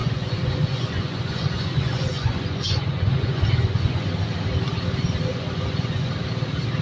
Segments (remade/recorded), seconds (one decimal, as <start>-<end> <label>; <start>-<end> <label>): 0.0-4.1 remade; 4.1-5.3 recorded; 5.3-6.1 remade; 6.1-6.8 recorded

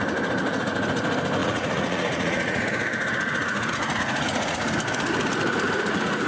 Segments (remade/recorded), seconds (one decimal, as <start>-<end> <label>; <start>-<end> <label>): 0.0-1.4 recorded; 1.4-2.7 remade; 2.7-3.4 recorded; 3.4-4.6 remade; 4.6-6.3 recorded

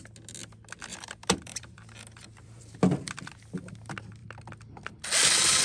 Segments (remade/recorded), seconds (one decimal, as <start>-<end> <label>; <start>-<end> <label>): 0.0-0.9 recorded; 0.9-2.6 remade; 2.6-5.6 recorded

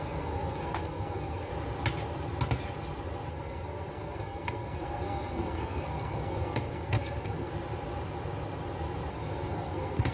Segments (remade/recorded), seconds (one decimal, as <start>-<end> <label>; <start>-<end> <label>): 0.0-1.5 remade; 1.5-3.3 recorded; 3.3-7.5 remade; 7.5-9.1 recorded; 9.1-10.1 remade

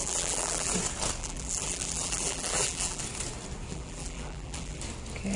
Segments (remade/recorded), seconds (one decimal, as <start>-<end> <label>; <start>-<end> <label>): 0.0-0.7 remade; 0.7-1.2 recorded; 1.2-3.0 remade; 3.0-3.7 recorded; 3.7-4.8 remade; 4.8-5.4 recorded

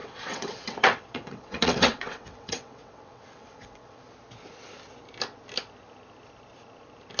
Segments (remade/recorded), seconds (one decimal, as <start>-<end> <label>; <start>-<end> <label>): 0.0-4.0 remade; 4.0-7.2 recorded